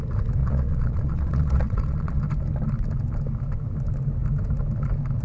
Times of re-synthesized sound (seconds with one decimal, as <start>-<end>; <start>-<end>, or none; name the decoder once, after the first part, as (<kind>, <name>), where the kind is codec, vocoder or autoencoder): 0.4-2.2 (vocoder, Vocos)